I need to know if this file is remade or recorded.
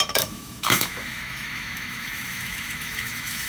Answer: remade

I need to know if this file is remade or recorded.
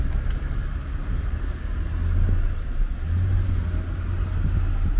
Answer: recorded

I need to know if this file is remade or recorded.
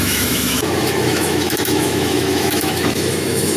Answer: remade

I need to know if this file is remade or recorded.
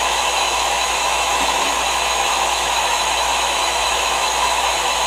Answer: remade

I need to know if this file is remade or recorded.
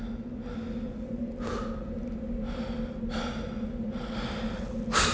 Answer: recorded